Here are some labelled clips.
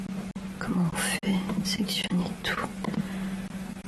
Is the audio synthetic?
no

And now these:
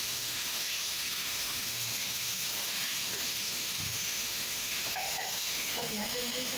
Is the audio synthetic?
yes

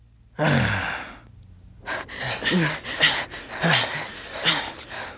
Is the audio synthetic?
no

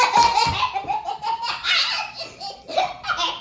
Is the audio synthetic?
no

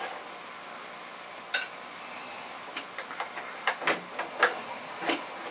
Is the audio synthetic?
no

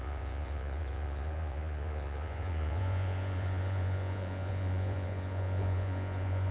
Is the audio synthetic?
yes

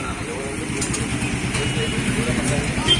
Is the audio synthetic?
no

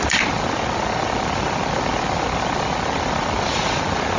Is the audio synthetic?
no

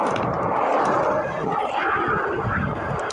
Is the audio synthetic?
no